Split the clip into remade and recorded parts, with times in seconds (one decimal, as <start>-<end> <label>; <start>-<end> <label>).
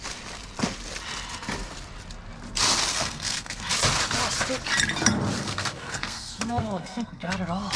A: 0.0-2.9 recorded; 2.9-3.7 remade; 3.7-5.4 recorded; 5.4-7.3 remade; 7.3-7.8 recorded